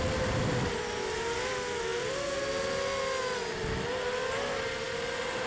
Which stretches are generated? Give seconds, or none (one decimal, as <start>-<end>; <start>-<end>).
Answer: none